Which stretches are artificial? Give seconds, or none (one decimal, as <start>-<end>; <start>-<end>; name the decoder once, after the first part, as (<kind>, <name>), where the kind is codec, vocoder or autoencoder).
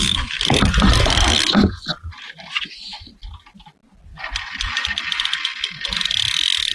none